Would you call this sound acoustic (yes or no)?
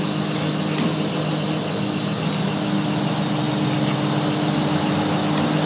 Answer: yes